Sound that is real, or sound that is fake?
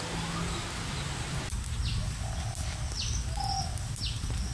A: real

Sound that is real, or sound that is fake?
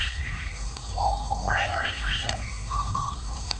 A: fake